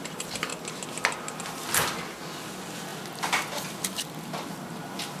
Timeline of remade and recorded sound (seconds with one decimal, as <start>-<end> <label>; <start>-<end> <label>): 0.0-0.5 remade; 0.5-1.4 recorded; 1.4-5.2 remade